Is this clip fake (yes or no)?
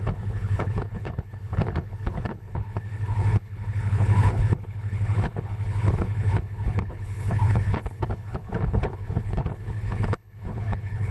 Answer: yes